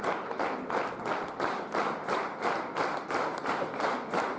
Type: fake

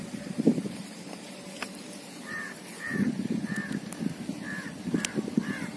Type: fake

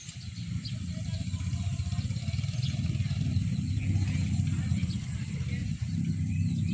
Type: fake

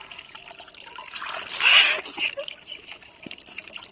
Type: real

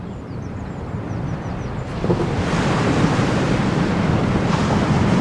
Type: fake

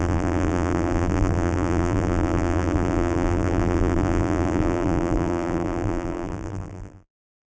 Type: fake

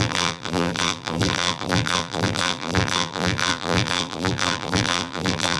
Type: fake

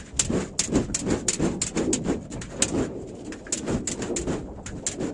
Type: real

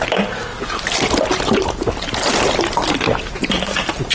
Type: real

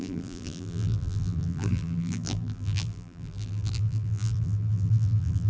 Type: fake